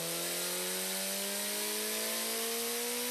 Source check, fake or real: real